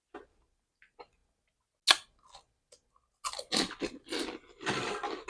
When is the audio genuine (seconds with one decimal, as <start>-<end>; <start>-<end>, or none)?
0.0-5.3